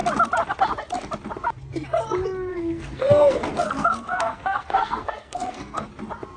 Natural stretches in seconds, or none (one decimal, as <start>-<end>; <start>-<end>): 0.0-2.5; 5.9-6.4